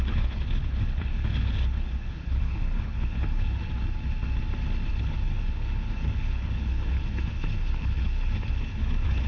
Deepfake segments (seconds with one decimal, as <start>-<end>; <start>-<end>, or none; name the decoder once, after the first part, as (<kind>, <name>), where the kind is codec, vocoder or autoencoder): 0.0-3.6 (codec, HILCodec); 4.9-9.3